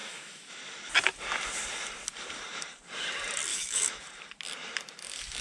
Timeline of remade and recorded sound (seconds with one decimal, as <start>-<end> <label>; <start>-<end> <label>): 0.0-0.6 remade; 0.6-3.5 recorded; 3.5-4.0 remade; 4.0-5.4 recorded